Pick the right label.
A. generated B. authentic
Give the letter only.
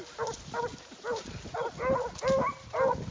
B